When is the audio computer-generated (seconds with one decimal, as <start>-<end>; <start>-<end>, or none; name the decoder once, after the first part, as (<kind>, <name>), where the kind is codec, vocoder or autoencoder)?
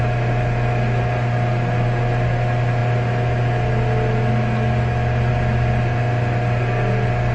none